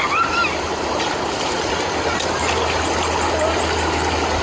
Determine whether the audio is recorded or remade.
recorded